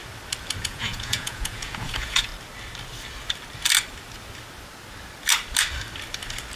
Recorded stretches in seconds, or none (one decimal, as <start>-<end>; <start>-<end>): 0.0-0.6; 2.3-6.6